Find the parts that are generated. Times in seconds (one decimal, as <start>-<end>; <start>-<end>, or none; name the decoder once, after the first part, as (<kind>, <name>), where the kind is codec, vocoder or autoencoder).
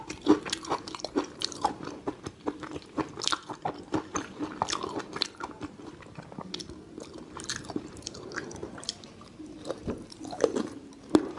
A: 0.0-3.1 (vocoder, BigVGAN v2); 7.5-11.4